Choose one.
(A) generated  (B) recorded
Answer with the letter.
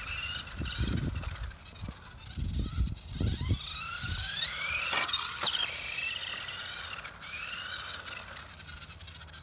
B